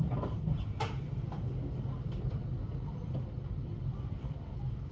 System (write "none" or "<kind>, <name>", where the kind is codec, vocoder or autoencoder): none